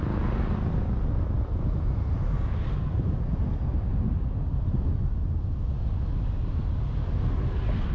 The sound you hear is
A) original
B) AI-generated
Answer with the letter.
A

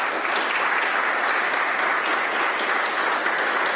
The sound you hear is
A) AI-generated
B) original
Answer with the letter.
B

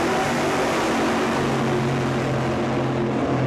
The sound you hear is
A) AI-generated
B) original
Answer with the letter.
B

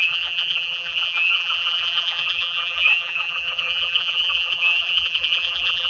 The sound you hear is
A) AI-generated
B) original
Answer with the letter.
A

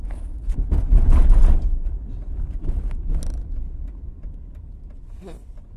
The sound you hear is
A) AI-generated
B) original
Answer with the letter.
B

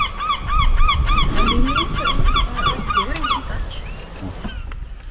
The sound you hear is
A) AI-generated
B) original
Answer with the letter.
B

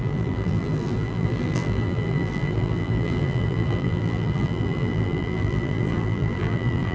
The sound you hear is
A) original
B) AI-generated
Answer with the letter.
B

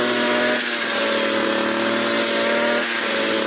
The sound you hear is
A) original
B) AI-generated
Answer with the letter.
A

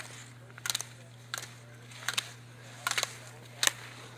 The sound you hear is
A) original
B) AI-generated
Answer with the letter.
A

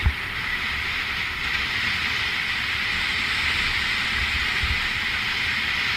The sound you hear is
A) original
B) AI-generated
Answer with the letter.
A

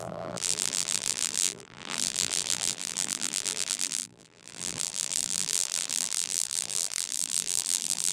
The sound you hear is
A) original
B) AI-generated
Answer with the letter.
B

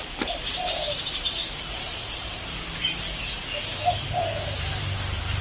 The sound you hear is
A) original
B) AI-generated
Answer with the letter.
B